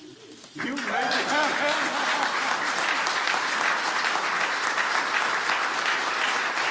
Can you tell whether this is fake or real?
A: real